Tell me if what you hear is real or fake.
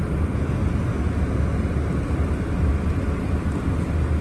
real